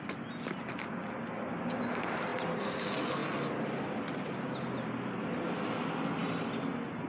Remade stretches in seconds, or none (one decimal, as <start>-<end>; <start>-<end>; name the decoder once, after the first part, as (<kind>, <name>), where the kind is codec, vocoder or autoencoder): none